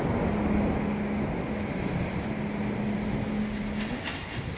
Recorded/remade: recorded